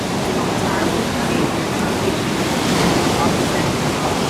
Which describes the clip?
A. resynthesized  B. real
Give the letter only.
B